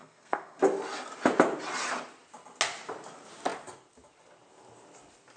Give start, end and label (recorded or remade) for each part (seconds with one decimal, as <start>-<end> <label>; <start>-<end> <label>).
0.0-0.6 remade; 0.6-5.4 recorded